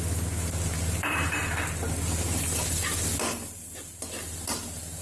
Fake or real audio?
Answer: real